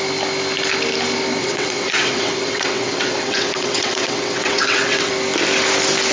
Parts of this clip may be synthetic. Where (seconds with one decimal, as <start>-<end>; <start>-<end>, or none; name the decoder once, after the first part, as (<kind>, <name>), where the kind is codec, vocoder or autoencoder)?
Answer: 1.4-5.1 (vocoder, WaveNeXt)